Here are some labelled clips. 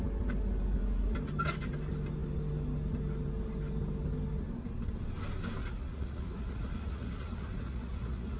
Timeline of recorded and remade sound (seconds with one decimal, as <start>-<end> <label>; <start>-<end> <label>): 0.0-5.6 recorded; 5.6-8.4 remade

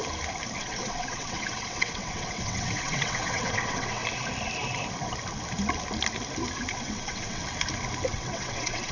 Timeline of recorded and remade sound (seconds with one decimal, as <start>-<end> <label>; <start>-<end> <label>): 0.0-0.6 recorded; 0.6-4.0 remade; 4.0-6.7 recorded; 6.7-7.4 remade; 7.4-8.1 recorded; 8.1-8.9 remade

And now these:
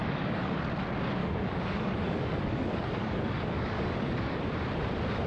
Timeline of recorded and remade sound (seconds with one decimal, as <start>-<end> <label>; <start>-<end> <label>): 0.0-0.6 remade; 0.6-1.2 recorded; 1.2-4.4 remade; 4.4-5.3 recorded